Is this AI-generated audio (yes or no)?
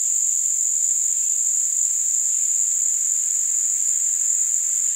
no